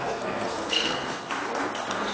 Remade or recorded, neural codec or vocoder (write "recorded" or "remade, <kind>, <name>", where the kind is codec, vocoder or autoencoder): remade, codec, SNAC